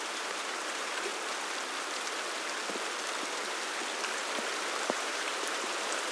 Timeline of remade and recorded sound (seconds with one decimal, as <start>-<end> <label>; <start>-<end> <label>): 0.0-1.1 remade; 1.1-4.8 recorded; 4.8-6.1 remade